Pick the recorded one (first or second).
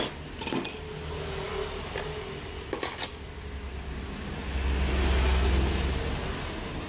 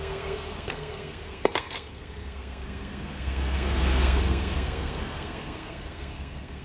first